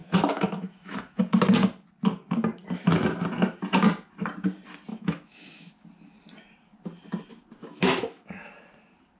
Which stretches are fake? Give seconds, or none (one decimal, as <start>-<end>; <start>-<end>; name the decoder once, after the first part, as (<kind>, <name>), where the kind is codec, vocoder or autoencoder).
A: 0.0-1.2 (autoencoder, DAC-VAE); 4.9-5.7; 7.6-8.5